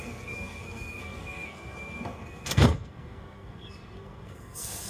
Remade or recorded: remade